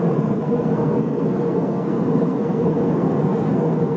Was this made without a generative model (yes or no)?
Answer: no